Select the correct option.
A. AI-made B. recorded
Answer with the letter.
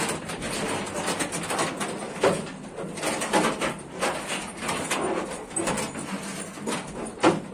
B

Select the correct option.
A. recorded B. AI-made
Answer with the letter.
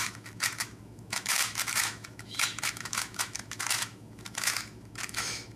B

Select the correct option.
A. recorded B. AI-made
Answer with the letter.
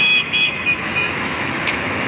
B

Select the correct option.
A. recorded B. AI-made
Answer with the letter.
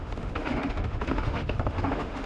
B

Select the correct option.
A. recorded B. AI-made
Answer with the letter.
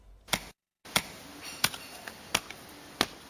A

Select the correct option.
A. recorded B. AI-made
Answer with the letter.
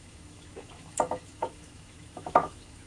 B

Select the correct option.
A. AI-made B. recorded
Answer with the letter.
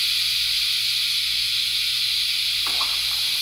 B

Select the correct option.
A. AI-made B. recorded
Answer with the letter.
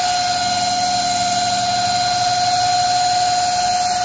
B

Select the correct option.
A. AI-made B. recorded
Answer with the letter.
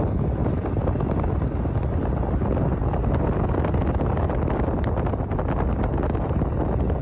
B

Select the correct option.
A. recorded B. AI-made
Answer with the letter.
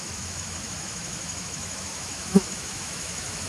B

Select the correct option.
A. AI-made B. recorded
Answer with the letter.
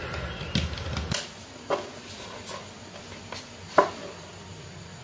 B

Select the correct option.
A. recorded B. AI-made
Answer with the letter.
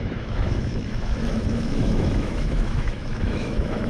B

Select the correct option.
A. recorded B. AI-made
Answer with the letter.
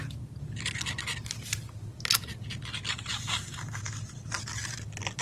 A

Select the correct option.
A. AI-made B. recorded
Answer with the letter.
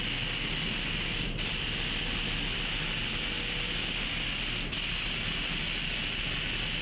B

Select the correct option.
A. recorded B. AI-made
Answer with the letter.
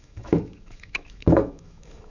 B